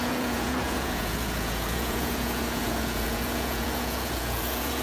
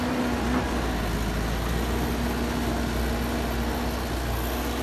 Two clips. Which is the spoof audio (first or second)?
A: first